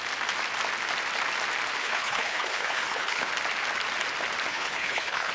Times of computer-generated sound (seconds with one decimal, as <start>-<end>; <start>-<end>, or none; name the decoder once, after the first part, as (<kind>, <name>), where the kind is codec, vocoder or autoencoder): 1.8-3.3 (codec, HILCodec); 4.5-5.3